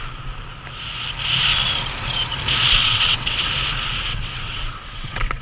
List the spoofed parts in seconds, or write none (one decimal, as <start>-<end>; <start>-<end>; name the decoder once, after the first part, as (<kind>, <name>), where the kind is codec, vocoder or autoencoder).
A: 2.8-3.4 (vocoder, WaveNeXt); 4.1-5.4